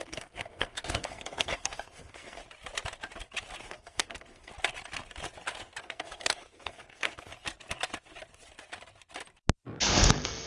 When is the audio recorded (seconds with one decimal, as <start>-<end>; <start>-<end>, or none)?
2.4-3.6; 4.5-5.8; 7.3-9.8